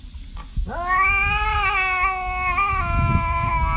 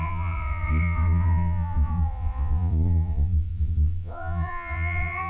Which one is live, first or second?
first